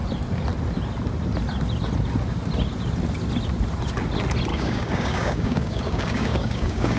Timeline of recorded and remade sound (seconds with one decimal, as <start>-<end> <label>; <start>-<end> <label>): 0.0-4.5 recorded; 4.5-7.0 remade